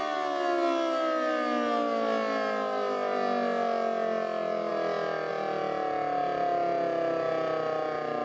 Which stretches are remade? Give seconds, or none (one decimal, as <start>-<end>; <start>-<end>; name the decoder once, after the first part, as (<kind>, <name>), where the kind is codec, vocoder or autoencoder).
none